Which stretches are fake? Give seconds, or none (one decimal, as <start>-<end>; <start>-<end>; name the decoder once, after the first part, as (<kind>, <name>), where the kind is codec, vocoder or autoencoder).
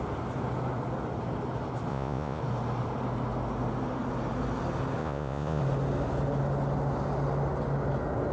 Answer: 1.9-2.4 (vocoder, Vocos); 5.0-5.6